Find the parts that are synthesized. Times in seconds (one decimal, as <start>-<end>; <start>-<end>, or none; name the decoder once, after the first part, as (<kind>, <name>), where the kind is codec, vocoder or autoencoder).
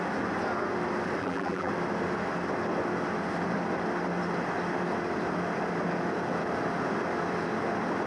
1.2-1.7 (vocoder, BigVGAN v2)